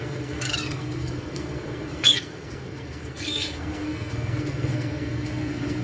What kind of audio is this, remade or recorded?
remade